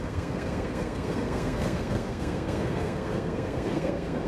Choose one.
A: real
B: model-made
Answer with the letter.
B